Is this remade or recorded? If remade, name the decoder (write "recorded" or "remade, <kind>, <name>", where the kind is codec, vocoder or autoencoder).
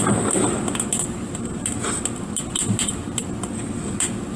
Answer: recorded